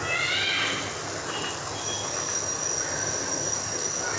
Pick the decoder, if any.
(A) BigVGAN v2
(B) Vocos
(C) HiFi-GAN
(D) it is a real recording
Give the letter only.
D